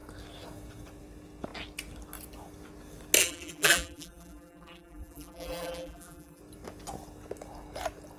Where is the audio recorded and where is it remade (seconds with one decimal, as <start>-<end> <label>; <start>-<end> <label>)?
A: 0.0-3.2 recorded; 3.2-6.4 remade; 6.4-8.2 recorded